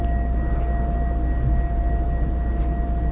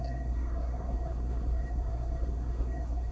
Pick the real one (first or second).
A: first